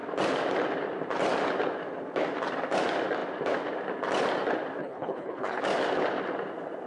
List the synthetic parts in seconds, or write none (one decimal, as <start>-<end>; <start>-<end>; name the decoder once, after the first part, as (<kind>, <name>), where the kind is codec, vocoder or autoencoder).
4.8-5.6 (codec, HILCodec)